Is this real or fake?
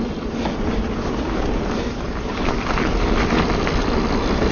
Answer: fake